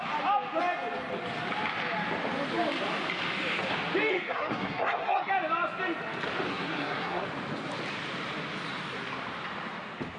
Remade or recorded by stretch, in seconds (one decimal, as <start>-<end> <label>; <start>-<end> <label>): 0.0-4.1 recorded; 4.1-5.3 remade; 5.3-6.5 recorded; 6.5-7.2 remade; 7.2-10.2 recorded